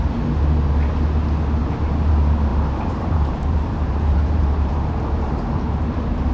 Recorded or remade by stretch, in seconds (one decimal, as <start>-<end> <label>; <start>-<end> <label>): 0.0-1.6 recorded; 1.6-2.1 remade; 2.1-2.5 recorded; 2.5-6.3 remade

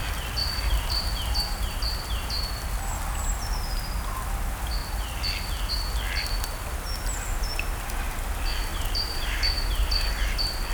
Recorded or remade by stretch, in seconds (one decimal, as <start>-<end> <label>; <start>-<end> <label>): 0.0-0.4 recorded; 0.4-1.3 remade; 1.3-8.7 recorded; 8.7-10.0 remade; 10.0-10.7 recorded

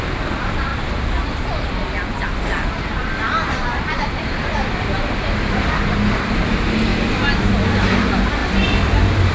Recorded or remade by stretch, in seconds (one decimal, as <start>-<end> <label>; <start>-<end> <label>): 0.0-0.7 remade; 0.7-3.6 recorded; 3.6-9.3 remade

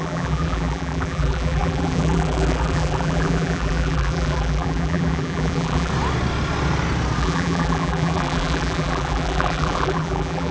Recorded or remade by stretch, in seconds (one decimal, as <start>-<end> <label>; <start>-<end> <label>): 0.0-5.9 remade; 5.9-7.2 recorded; 7.2-10.5 remade

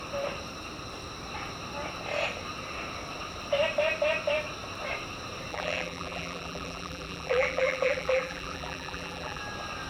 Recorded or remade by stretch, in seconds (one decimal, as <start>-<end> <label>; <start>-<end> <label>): 0.0-5.5 recorded; 5.5-9.4 remade; 9.4-9.9 recorded

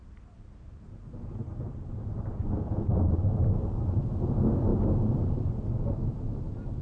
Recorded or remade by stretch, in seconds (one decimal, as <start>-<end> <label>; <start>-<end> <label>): 0.0-2.4 remade; 2.4-6.8 recorded